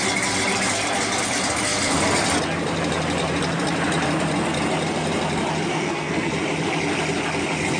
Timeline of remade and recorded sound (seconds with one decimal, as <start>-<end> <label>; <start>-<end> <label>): 0.0-5.7 recorded; 5.7-6.3 remade; 6.3-7.8 recorded